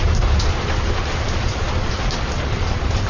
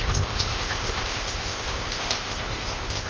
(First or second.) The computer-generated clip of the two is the second